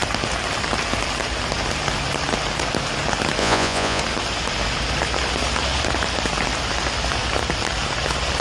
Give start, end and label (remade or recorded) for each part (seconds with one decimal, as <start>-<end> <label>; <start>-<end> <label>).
0.0-3.4 recorded; 3.4-4.0 remade; 4.0-8.4 recorded